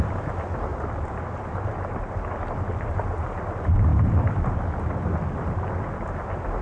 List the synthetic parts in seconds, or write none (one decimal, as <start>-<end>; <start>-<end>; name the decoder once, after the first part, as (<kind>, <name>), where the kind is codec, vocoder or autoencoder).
none